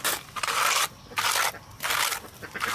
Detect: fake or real real